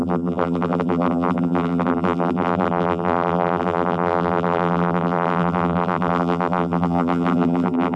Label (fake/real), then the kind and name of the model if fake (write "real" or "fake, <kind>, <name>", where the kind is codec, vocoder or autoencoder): fake, vocoder, BigVGAN v2